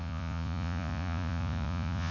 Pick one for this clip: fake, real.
fake